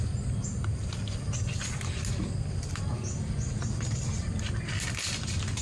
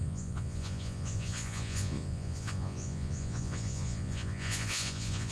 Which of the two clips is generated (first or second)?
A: second